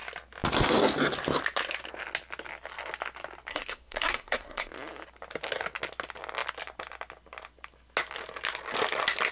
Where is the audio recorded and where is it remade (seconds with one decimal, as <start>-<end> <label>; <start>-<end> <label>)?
0.0-3.5 recorded; 3.5-4.7 remade; 4.7-9.3 recorded

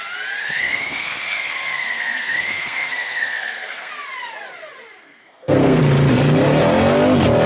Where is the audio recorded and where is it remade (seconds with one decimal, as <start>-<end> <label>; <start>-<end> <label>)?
0.0-0.4 recorded; 0.4-3.9 remade; 3.9-5.0 recorded; 5.0-5.8 remade; 5.8-7.5 recorded

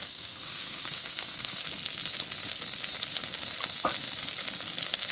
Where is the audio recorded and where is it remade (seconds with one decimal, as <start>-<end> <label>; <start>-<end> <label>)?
0.0-1.6 remade; 1.6-5.1 recorded

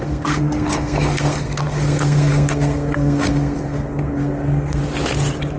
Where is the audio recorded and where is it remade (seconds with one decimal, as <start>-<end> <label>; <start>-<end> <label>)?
0.0-4.8 remade; 4.8-5.6 recorded